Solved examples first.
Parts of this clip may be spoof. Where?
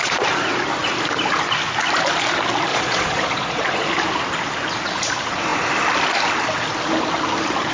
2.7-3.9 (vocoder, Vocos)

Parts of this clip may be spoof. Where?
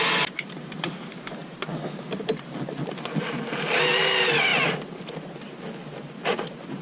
none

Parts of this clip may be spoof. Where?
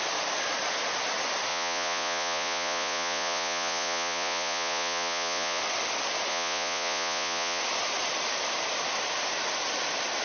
1.5-5.6 (vocoder, Vocos); 6.3-7.6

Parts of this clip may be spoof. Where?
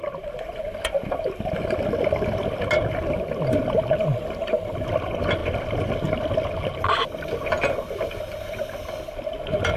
none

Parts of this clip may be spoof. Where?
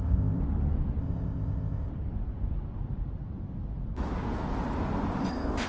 0.0-0.4 (codec, ZipCodec); 1.0-1.9; 5.3-5.7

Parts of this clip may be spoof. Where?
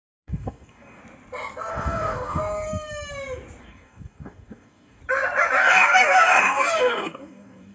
0.0-1.0 (codec, DAC); 1.7-2.4; 3.6-5.0; 5.6-7.7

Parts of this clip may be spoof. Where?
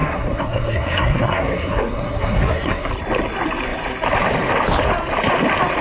0.0-2.9 (codec, SNAC)